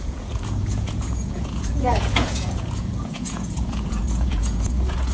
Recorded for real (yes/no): no